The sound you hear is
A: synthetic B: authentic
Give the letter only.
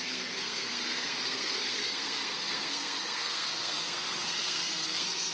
A